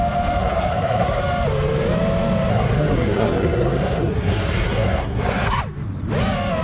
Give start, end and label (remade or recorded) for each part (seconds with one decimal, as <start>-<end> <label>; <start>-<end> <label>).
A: 0.0-0.4 recorded; 0.4-1.2 remade; 1.2-2.5 recorded; 2.5-5.6 remade; 5.6-6.6 recorded